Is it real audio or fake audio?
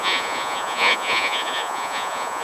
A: fake